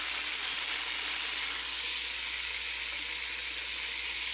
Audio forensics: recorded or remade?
recorded